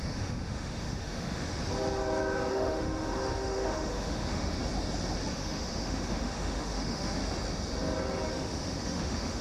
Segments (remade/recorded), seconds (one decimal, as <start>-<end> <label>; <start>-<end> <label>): 0.0-1.6 remade; 1.6-2.5 recorded; 2.5-4.6 remade; 4.6-5.3 recorded; 5.3-7.2 remade; 7.2-8.3 recorded; 8.3-9.4 remade